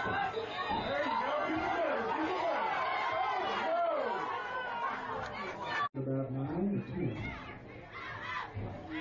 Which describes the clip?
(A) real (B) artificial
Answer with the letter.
A